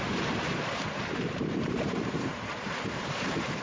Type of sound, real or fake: fake